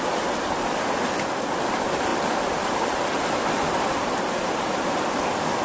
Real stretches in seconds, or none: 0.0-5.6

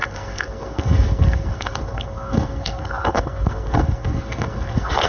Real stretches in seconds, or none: none

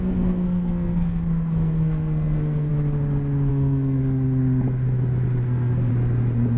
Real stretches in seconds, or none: 2.7-3.5; 4.0-5.4; 5.9-6.6

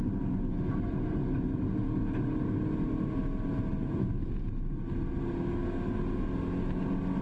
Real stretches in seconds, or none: 0.0-7.2

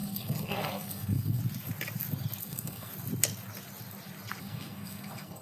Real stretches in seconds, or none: 1.4-2.4; 2.9-4.4

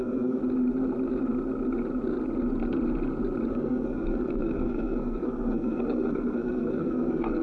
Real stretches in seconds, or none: 0.4-3.5

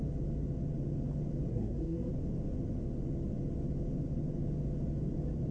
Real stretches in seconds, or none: 0.0-1.5; 2.1-5.5

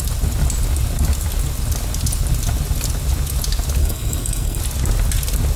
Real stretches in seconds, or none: 0.0-3.8; 4.6-5.6